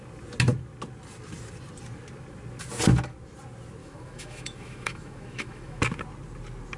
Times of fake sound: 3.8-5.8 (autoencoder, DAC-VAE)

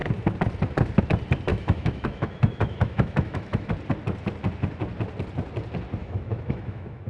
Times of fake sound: 1.5-3.7 (autoencoder, DAC-VAE); 6.0-7.1

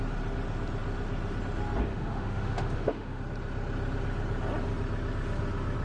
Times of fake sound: 1.9-3.2 (autoencoder, DAC-VAE)

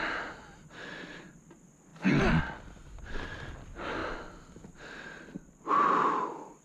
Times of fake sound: none